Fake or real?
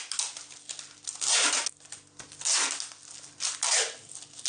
real